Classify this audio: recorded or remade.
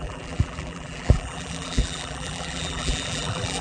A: remade